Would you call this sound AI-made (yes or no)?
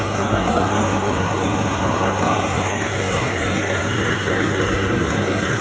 yes